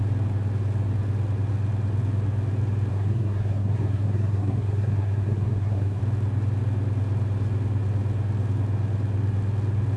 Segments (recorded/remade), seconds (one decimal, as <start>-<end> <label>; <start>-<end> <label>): 0.0-2.9 recorded; 2.9-6.0 remade; 6.0-10.0 recorded